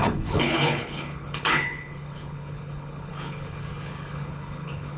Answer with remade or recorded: remade